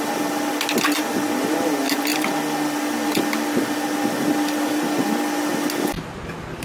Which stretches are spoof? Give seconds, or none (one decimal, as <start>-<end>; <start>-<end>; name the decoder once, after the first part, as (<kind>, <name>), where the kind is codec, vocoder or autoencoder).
none